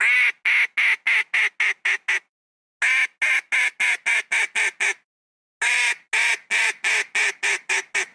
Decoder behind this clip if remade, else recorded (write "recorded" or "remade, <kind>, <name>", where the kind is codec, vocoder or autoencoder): recorded